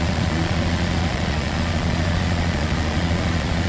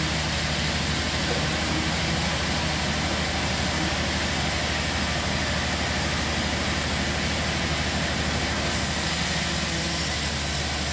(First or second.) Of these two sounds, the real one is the second